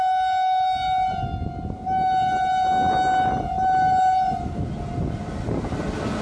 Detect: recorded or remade recorded